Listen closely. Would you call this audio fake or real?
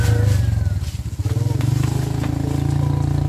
real